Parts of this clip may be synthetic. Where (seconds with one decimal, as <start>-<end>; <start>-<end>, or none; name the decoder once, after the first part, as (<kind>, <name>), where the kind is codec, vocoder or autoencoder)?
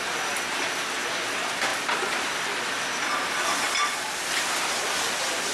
0.0-5.5 (vocoder, BigVGAN v2)